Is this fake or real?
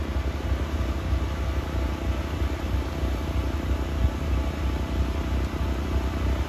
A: real